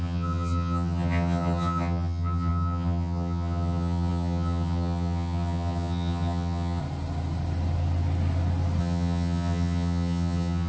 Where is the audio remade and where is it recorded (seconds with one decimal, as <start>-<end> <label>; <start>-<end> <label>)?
0.0-6.8 remade; 6.8-8.8 recorded; 8.8-10.7 remade